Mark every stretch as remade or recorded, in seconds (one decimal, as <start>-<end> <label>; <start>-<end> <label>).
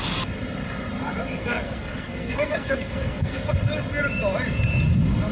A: 0.0-1.4 recorded; 1.4-3.5 remade; 3.5-5.3 recorded